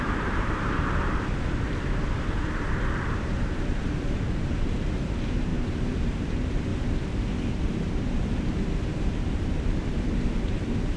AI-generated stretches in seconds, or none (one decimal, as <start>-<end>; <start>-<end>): 0.0-6.7; 9.1-11.0